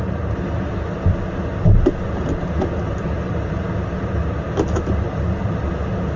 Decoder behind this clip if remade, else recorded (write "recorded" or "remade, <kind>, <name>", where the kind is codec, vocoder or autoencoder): recorded